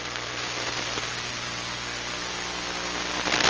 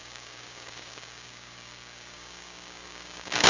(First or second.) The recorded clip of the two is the first